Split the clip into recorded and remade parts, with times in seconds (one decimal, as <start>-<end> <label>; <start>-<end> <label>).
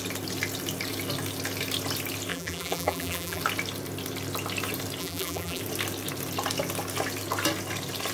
0.0-2.3 recorded; 2.3-3.4 remade; 3.4-5.0 recorded; 5.0-5.6 remade; 5.6-8.1 recorded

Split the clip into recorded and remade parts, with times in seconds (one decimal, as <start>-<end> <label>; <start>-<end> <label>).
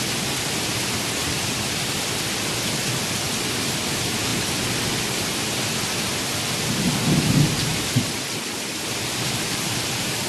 0.0-10.3 recorded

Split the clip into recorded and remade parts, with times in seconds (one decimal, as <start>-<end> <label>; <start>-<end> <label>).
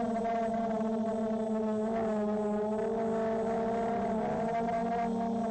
0.0-1.1 remade; 1.1-3.9 recorded; 3.9-4.8 remade; 4.8-5.5 recorded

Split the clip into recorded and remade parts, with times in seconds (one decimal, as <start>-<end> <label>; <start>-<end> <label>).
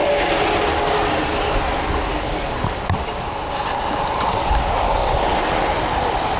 0.0-6.4 recorded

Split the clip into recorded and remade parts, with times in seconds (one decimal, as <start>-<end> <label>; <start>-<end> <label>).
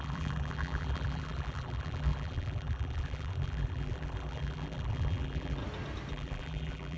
0.0-5.6 remade; 5.6-6.1 recorded; 6.1-7.0 remade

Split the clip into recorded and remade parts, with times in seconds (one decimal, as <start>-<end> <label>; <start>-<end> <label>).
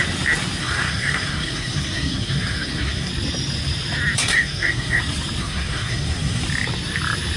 0.0-0.6 recorded; 0.6-3.1 remade; 3.1-4.2 recorded; 4.2-5.0 remade; 5.0-5.4 recorded; 5.4-6.4 remade; 6.4-7.4 recorded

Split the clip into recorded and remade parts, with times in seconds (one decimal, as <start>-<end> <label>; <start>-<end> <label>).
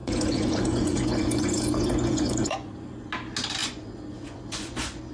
0.0-3.1 remade; 3.1-3.6 recorded; 3.6-5.1 remade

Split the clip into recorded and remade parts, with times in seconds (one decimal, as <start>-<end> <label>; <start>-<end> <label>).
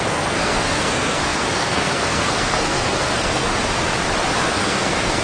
0.0-3.5 remade; 3.5-4.3 recorded; 4.3-5.2 remade